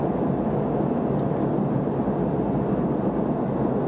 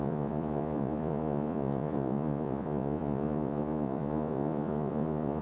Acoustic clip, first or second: first